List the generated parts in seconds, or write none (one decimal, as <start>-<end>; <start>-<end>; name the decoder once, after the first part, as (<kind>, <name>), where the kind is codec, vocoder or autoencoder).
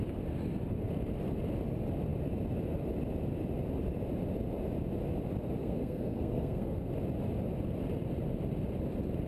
5.6-6.9 (codec, SNAC)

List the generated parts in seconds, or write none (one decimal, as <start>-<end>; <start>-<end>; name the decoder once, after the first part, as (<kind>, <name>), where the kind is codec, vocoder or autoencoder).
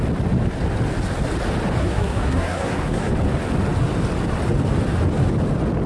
1.8-3.1 (codec, SNAC)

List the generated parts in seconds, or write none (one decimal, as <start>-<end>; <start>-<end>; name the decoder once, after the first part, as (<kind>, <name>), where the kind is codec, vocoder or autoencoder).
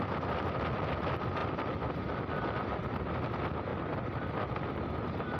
none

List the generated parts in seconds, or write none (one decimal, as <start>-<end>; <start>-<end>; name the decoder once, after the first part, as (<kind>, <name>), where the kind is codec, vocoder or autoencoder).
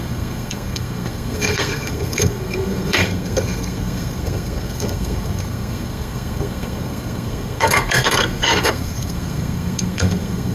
0.0-10.5 (codec, SNAC)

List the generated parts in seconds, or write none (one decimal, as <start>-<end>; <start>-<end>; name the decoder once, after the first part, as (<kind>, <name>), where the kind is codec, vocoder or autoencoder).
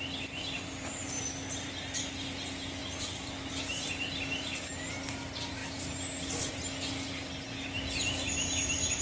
none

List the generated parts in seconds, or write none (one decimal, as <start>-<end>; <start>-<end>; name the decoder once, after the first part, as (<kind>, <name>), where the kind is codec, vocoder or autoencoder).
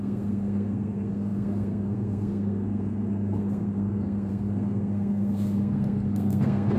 0.0-6.8 (codec, SNAC)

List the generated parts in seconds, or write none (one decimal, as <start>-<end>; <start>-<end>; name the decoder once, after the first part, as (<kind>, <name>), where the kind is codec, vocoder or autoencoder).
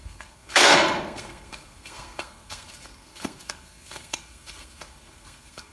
0.0-5.7 (codec, SNAC)